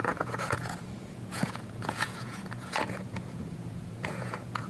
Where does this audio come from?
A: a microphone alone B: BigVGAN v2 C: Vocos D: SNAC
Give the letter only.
C